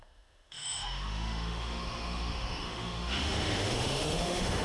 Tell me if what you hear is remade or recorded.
remade